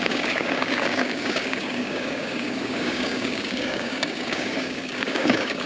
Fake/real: fake